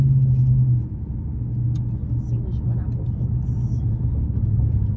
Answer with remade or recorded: recorded